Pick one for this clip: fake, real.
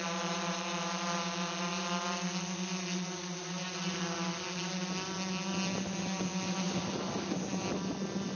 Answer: real